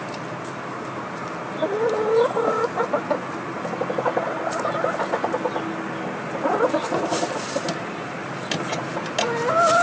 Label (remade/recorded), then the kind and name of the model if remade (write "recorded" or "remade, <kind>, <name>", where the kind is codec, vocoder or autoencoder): recorded